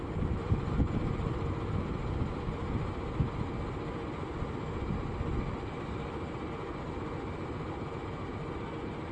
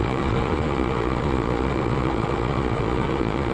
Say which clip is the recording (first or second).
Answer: first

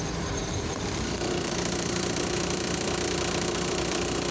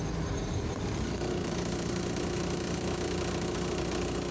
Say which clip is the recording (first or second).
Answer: second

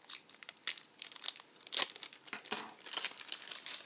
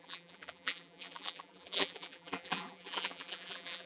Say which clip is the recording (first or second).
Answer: first